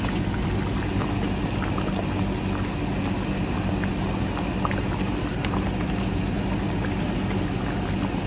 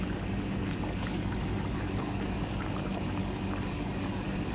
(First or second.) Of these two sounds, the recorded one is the first